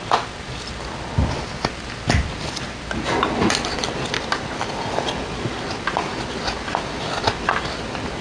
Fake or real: real